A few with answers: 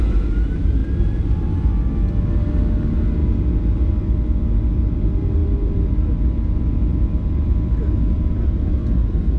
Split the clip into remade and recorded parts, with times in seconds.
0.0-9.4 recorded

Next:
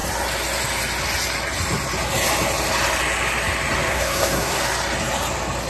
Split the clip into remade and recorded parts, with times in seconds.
0.0-3.9 recorded; 3.9-4.6 remade; 4.6-5.7 recorded

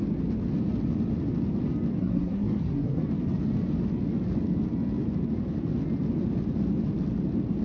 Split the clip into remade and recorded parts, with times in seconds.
0.0-2.0 recorded; 2.0-3.0 remade; 3.0-7.6 recorded

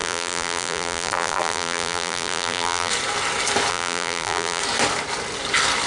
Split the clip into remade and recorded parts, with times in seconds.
0.0-2.9 remade; 2.9-3.7 recorded; 3.7-4.6 remade; 4.6-5.9 recorded

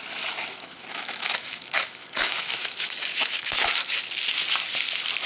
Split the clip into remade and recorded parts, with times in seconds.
0.0-0.5 recorded; 0.5-3.7 remade; 3.7-5.3 recorded

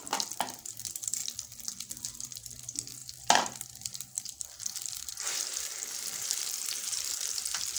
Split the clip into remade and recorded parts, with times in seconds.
0.0-1.2 recorded; 1.2-1.9 remade; 1.9-3.0 recorded; 3.0-5.1 remade; 5.1-5.5 recorded; 5.5-7.8 remade

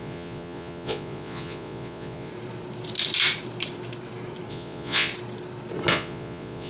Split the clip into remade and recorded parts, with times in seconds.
0.0-2.3 remade; 2.3-4.5 recorded; 4.5-5.1 remade; 5.1-5.9 recorded; 5.9-6.7 remade

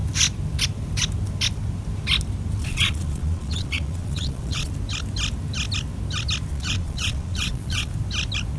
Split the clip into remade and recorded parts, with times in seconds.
0.0-2.6 recorded; 2.6-4.7 remade; 4.7-6.5 recorded; 6.5-7.9 remade; 7.9-8.6 recorded